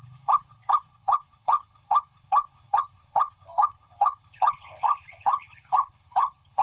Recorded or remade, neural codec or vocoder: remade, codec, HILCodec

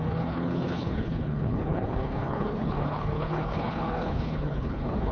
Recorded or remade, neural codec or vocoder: remade, codec, HILCodec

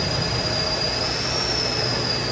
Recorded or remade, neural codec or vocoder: recorded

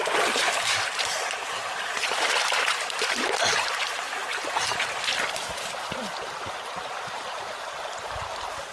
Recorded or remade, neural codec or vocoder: recorded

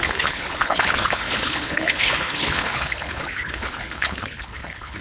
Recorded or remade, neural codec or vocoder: remade, codec, HILCodec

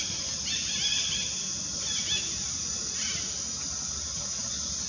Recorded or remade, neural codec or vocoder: recorded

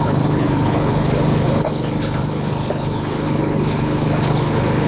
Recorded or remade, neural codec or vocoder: remade, codec, HILCodec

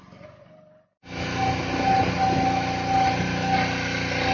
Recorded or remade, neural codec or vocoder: recorded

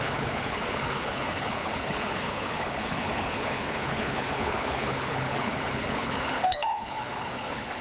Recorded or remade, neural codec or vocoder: remade, codec, HILCodec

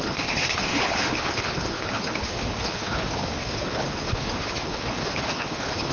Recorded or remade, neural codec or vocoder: remade, codec, HILCodec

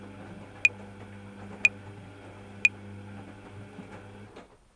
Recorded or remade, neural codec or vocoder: recorded